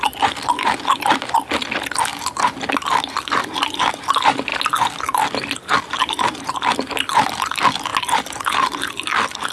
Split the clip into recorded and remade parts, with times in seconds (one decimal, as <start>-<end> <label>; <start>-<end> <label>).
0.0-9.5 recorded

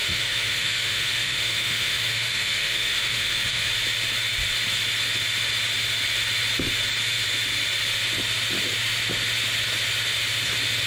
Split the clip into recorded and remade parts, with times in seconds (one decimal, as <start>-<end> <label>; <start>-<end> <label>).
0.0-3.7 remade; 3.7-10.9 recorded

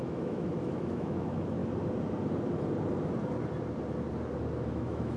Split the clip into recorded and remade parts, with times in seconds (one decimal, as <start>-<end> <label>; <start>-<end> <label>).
0.0-1.6 remade; 1.6-4.7 recorded; 4.7-5.2 remade

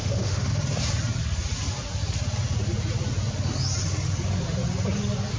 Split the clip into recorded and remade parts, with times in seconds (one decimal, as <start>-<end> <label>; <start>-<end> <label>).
0.0-0.6 remade; 0.6-5.4 recorded

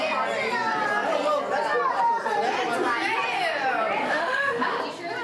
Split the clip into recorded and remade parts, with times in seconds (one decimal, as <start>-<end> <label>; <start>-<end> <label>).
0.0-4.0 recorded; 4.0-4.8 remade; 4.8-5.2 recorded